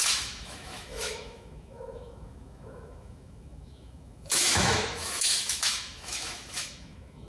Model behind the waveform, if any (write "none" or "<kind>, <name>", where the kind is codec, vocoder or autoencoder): autoencoder, DAC-VAE